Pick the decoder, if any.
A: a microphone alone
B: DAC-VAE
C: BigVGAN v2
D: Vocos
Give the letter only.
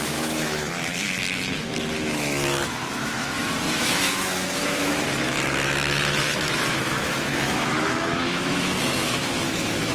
B